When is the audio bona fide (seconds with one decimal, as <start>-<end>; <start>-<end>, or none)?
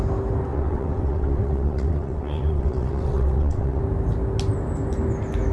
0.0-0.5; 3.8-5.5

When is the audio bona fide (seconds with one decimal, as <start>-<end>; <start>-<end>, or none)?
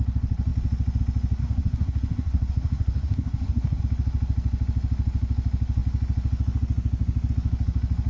0.0-1.4; 3.8-8.1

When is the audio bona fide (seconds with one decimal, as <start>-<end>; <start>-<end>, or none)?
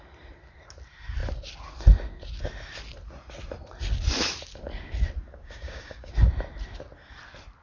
0.0-5.3; 6.1-7.6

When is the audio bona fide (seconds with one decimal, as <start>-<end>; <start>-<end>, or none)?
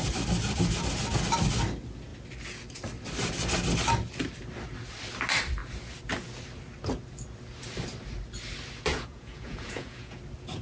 0.0-8.9; 10.2-10.6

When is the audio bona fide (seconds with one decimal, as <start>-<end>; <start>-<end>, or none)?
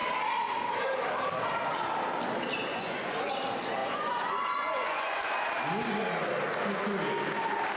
0.0-2.7; 3.3-3.8; 5.3-7.8